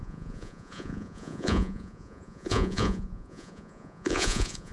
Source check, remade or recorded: remade